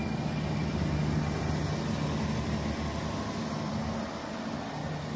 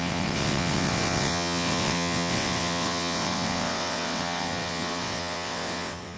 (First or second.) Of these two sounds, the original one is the first